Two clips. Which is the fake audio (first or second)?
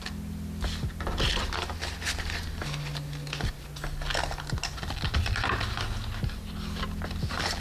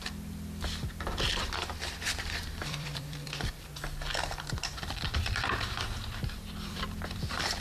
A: second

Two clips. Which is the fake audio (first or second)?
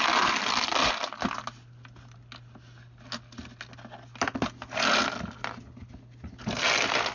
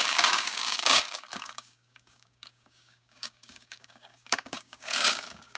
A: second